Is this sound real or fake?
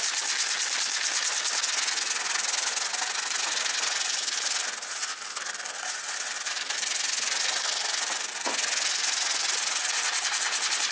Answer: real